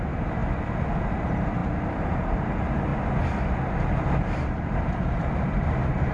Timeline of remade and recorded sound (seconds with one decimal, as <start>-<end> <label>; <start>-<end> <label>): 0.0-2.9 remade; 2.9-4.6 recorded; 4.6-6.1 remade